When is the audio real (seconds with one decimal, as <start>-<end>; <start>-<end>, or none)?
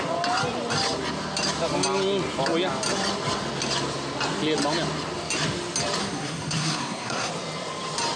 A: 0.0-6.0; 7.3-8.2